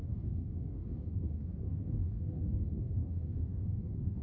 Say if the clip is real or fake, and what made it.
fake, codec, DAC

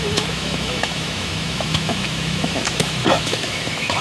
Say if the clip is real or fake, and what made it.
fake, autoencoder, DAC-VAE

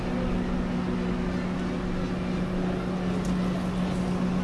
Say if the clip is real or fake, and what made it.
real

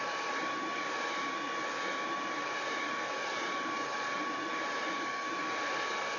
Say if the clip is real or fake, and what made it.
real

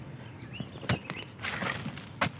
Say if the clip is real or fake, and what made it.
real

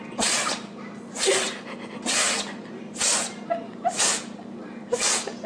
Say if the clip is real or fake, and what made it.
real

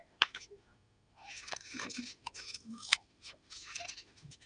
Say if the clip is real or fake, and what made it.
fake, autoencoder, DAC-VAE